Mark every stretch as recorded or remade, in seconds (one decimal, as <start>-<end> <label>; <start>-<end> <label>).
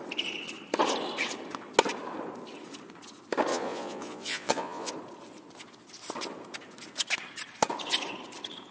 0.0-3.5 recorded; 3.5-4.9 remade; 4.9-8.7 recorded